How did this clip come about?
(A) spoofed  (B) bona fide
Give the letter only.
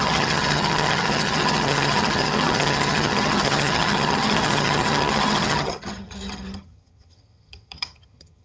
A